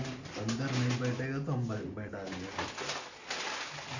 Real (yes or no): yes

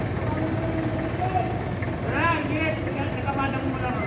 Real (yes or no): yes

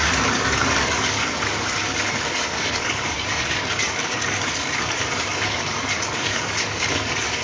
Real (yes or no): no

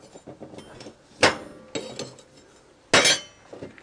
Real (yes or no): yes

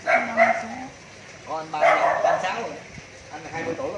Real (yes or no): yes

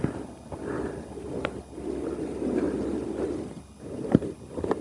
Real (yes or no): yes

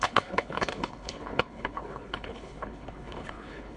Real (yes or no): no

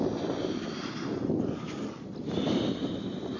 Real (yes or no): yes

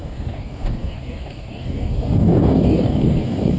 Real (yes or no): no